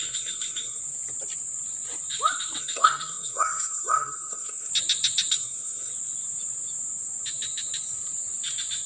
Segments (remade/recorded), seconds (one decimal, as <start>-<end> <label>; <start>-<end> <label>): 0.0-0.8 remade; 0.8-2.6 recorded; 2.6-4.7 remade; 4.7-5.3 recorded; 5.3-5.9 remade; 5.9-8.9 recorded